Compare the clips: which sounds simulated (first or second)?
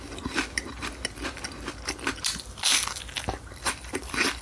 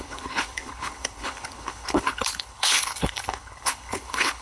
second